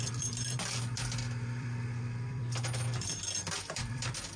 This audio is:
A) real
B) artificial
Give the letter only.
B